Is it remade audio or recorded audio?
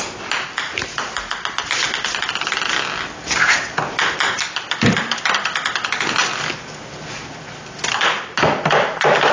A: recorded